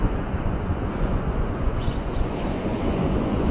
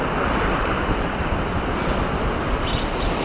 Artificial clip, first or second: first